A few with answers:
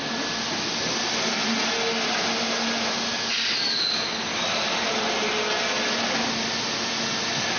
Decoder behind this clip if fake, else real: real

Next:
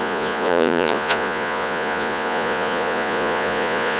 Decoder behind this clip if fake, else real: fake, vocoder, Vocos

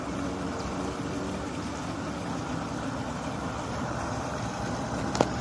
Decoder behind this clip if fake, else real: real